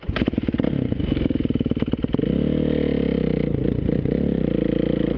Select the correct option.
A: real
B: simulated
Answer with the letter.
A